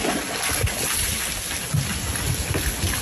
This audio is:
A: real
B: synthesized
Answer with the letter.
A